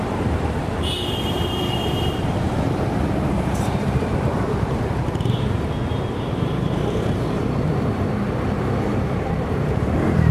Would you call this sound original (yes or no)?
no